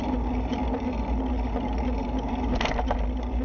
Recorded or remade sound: recorded